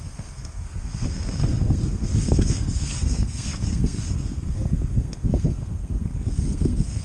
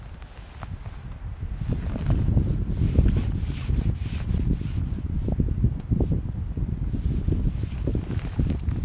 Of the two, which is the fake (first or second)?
first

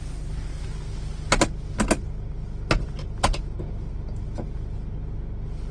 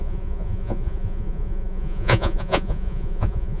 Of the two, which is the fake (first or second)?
second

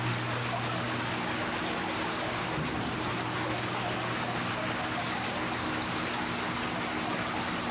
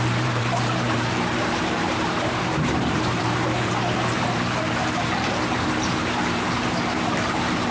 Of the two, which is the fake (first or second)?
second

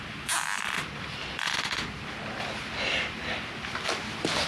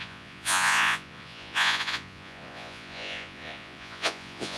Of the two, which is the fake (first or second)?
second